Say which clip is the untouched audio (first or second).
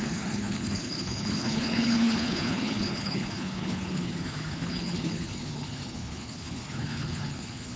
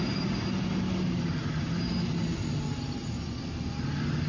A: second